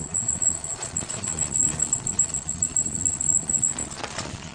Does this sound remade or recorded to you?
remade